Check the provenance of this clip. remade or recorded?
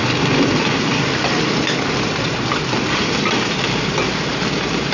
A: remade